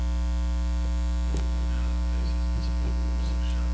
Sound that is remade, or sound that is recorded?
recorded